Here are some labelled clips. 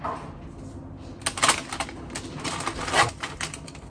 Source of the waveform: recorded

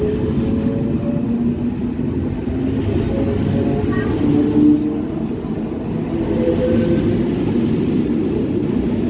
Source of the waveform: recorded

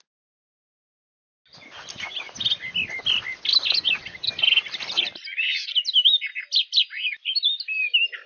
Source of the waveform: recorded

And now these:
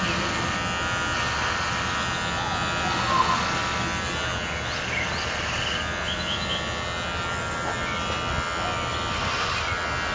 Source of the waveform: recorded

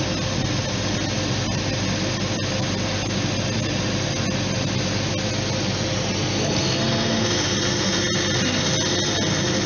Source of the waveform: recorded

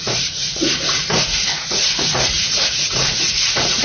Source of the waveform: remade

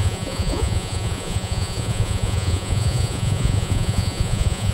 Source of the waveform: remade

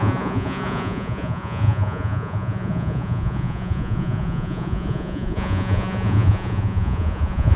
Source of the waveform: remade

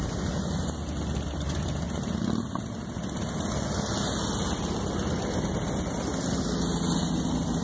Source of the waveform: recorded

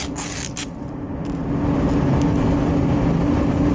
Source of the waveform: recorded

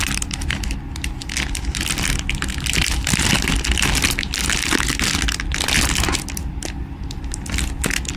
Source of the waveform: recorded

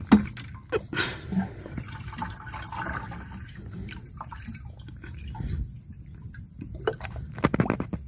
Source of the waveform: recorded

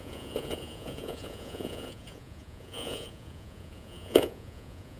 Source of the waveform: remade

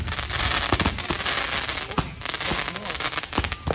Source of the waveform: recorded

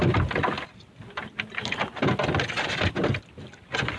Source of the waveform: recorded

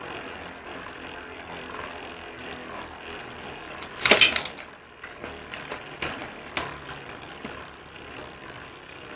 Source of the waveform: recorded